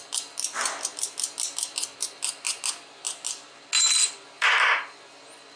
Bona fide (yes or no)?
yes